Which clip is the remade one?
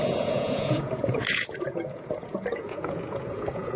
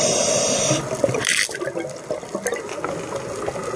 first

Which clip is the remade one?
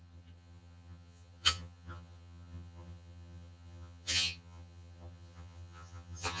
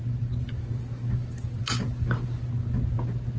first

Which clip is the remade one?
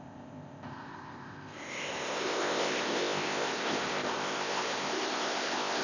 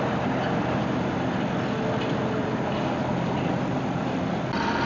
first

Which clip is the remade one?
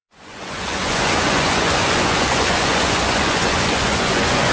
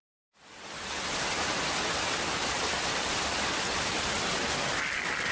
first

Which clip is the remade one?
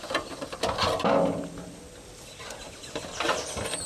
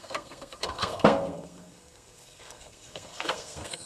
second